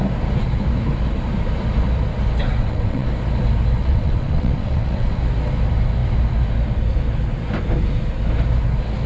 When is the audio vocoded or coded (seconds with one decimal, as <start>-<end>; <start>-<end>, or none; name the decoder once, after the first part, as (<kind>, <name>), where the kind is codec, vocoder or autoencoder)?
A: 2.6-3.1 (vocoder, WaveNeXt); 3.8-5.2